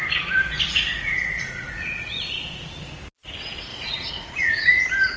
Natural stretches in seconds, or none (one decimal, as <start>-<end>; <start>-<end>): 0.0-0.9; 2.5-3.7; 4.8-5.2